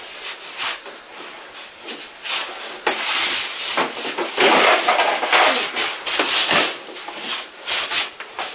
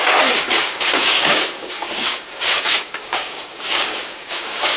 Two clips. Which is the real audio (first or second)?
first